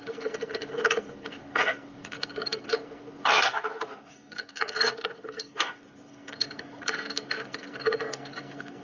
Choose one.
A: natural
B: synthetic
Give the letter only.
B